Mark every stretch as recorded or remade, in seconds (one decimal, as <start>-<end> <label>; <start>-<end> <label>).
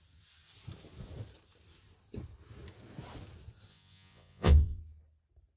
0.0-3.7 recorded; 3.7-4.8 remade; 4.8-5.6 recorded